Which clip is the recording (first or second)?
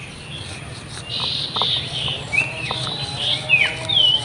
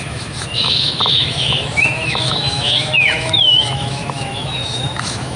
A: first